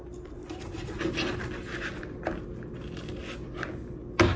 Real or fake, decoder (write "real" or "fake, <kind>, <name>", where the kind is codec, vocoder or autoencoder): real